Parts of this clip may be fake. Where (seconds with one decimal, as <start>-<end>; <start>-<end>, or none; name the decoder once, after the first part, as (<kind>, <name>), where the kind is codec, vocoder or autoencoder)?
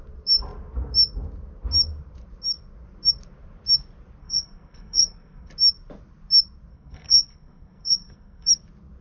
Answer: 4.2-5.5 (codec, SNAC); 6.7-8.5